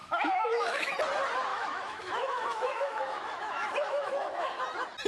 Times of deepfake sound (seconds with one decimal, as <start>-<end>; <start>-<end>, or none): 0.0-0.9; 1.5-4.6